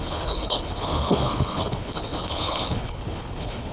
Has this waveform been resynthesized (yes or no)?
yes